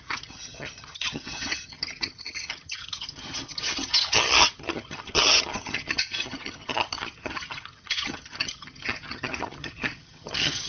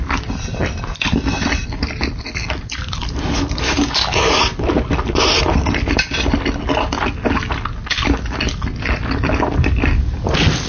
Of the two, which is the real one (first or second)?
second